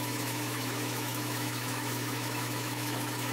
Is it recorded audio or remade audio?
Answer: remade